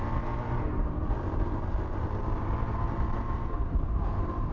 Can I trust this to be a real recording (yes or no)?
no